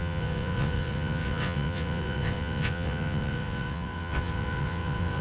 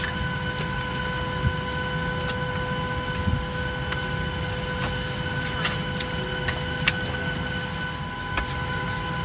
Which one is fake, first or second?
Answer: first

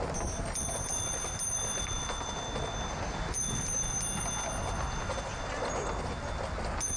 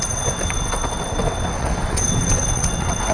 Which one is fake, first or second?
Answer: second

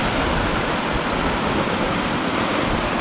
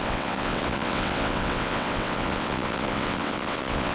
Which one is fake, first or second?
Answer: second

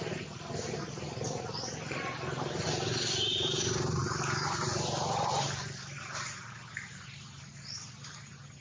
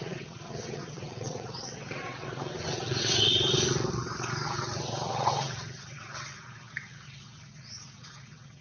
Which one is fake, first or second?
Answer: second